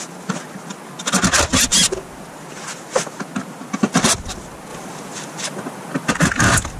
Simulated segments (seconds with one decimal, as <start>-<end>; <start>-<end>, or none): none